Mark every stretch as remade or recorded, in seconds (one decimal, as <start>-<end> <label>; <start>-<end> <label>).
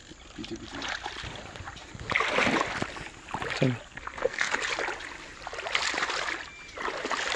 0.0-3.9 recorded; 3.9-4.5 remade; 4.5-7.4 recorded